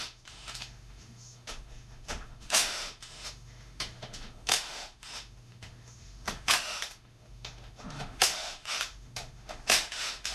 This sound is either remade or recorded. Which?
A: remade